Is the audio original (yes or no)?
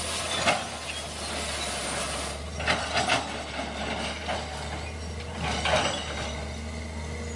yes